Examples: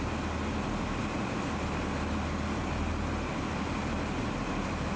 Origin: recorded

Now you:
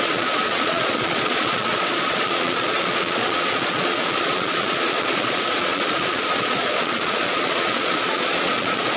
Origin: remade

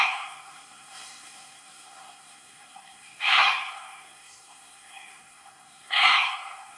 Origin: remade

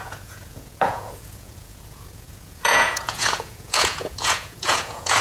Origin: remade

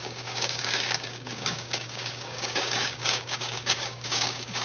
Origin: remade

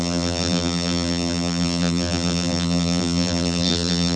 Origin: remade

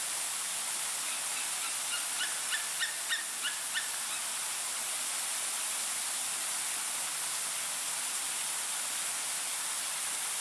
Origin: recorded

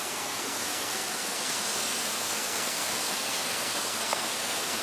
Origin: remade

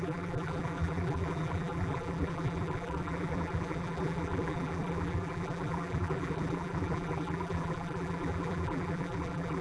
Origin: remade